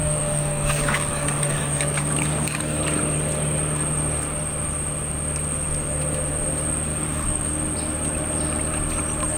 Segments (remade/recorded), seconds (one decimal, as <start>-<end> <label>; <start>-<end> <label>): 0.0-2.8 remade; 2.8-6.9 recorded; 6.9-7.5 remade; 7.5-9.4 recorded